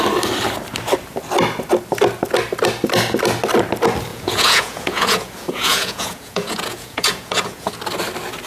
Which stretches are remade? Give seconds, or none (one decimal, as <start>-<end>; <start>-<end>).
4.1-7.7